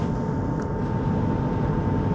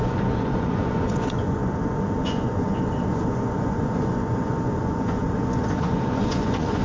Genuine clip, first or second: first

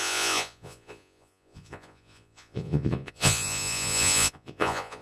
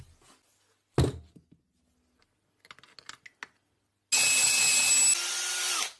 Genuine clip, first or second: second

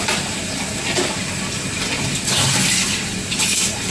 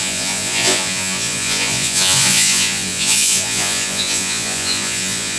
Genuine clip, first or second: first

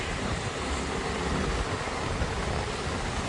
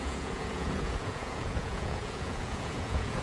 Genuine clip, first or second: first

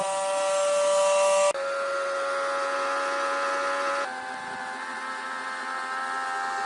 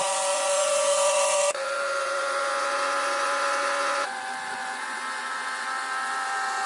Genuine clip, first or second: first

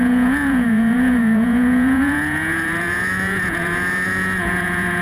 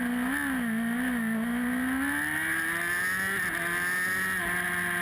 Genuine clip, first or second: second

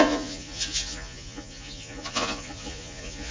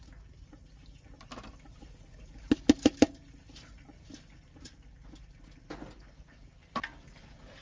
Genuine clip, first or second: second